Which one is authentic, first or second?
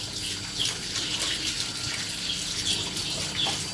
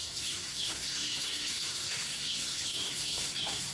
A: first